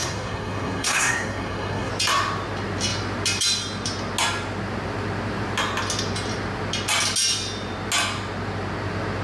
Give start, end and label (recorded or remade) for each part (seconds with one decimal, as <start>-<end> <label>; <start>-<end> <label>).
0.0-1.9 remade; 1.9-9.2 recorded

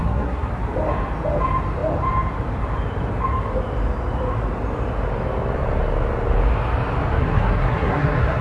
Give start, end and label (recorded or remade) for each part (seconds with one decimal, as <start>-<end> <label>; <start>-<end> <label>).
0.0-0.5 remade; 0.5-7.2 recorded; 7.2-8.4 remade